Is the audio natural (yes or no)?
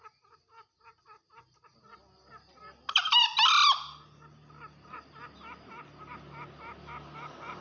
yes